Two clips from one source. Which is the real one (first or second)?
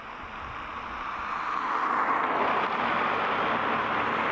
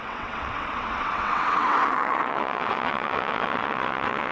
first